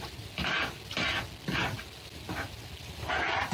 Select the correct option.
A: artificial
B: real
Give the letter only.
B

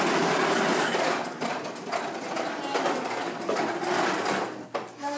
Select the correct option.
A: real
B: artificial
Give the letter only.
A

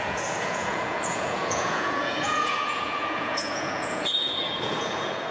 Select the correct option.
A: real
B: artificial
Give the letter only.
B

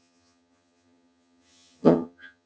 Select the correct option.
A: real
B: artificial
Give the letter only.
B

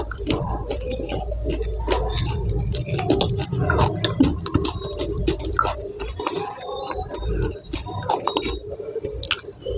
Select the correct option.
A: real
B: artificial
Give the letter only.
A